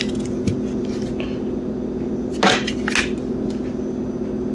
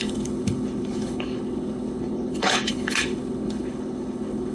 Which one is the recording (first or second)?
first